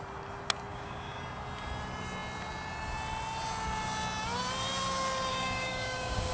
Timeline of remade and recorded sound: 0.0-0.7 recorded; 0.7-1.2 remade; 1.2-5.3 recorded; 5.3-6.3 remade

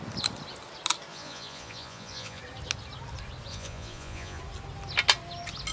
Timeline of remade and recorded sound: 0.0-1.1 recorded; 1.1-2.4 remade; 2.4-3.5 recorded; 3.5-4.4 remade; 4.4-5.7 recorded

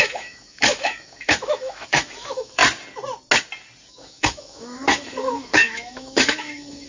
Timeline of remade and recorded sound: 0.0-2.6 remade; 2.6-3.9 recorded; 3.9-6.9 remade

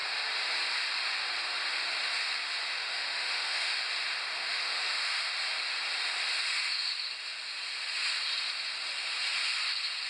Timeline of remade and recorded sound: 0.0-2.7 recorded; 2.7-3.8 remade; 3.8-4.4 recorded; 4.4-5.3 remade; 5.3-10.1 recorded

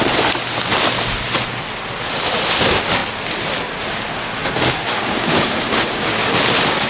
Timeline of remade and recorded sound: 0.0-4.4 recorded; 4.4-6.4 remade; 6.4-6.9 recorded

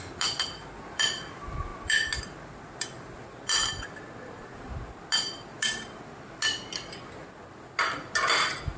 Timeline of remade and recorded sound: 0.0-8.8 recorded

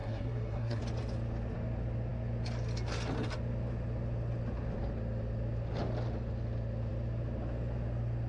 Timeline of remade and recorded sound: 0.0-0.8 remade; 0.8-8.3 recorded

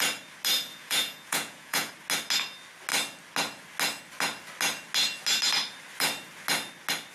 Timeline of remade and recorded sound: 0.0-0.7 recorded; 0.7-1.9 remade; 1.9-7.1 recorded